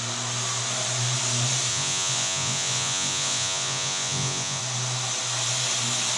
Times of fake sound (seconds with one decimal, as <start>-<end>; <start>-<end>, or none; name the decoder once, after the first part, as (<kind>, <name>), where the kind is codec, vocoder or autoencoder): 1.7-4.6 (vocoder, Vocos)